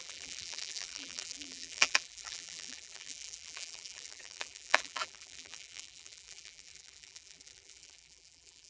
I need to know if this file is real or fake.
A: fake